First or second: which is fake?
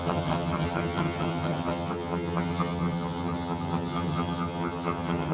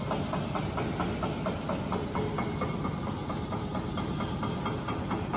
first